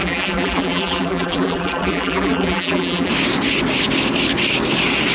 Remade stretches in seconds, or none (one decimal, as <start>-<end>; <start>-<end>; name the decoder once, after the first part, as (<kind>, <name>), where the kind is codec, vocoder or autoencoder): 0.0-3.1 (vocoder, BigVGAN v2)